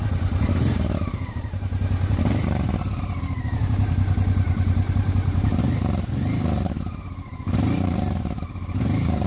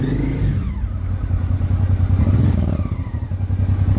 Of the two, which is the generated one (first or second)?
first